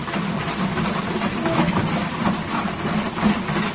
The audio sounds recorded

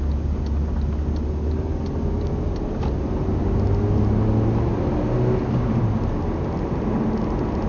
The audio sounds recorded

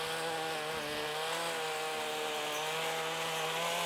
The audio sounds recorded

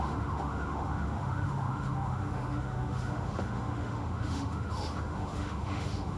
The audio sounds remade